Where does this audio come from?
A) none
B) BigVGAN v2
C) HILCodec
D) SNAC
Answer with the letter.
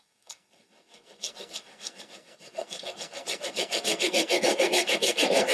D